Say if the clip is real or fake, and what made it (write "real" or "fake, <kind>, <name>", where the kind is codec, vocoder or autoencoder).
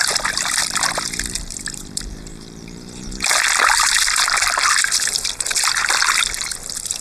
fake, vocoder, BigVGAN v2